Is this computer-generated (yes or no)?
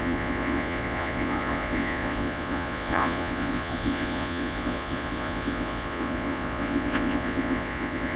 yes